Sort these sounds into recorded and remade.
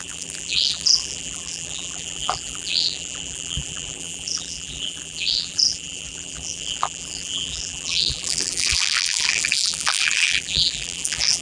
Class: remade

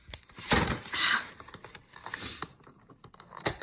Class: remade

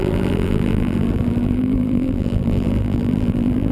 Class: remade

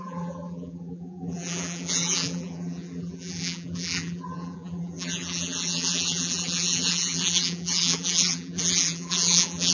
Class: remade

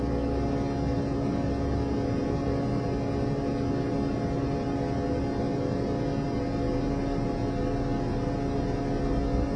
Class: recorded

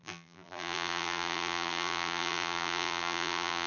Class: remade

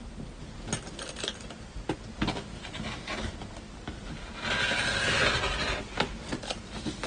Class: recorded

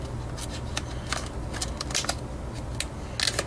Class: recorded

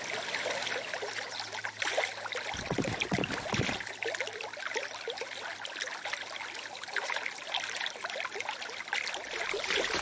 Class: recorded